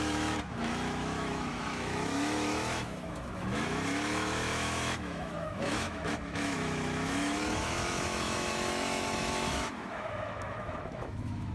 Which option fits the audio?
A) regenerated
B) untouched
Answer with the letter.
A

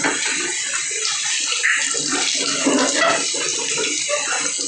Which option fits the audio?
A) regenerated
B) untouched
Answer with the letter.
B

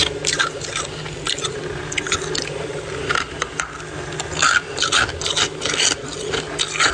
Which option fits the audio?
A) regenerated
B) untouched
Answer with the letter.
B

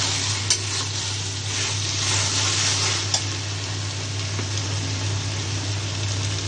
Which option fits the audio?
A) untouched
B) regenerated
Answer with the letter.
A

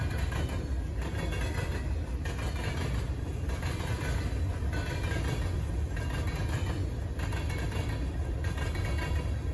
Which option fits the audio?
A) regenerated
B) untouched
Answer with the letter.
B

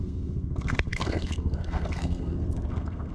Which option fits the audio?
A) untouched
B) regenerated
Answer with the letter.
B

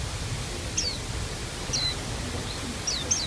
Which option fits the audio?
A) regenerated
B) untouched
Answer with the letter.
B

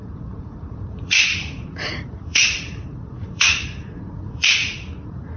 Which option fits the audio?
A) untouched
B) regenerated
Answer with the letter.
B